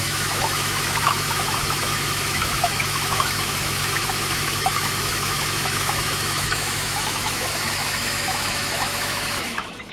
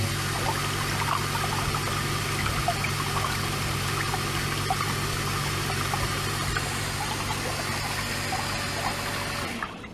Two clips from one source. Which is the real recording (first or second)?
second